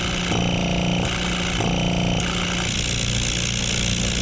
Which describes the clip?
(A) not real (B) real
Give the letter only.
B